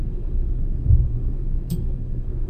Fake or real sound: fake